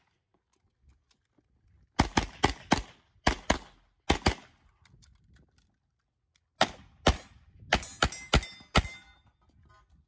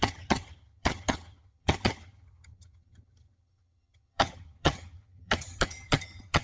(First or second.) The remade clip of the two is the second